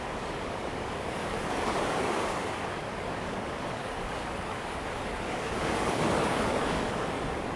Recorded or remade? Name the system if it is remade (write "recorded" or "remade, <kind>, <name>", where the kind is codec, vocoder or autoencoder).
remade, codec, DAC